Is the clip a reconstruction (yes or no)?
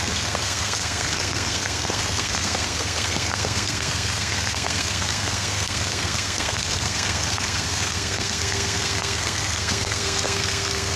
yes